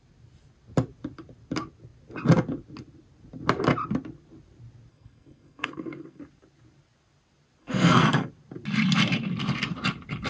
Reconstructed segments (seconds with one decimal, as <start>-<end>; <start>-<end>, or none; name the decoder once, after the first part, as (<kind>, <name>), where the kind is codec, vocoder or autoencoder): 4.9-6.2 (codec, SNAC); 7.6-8.3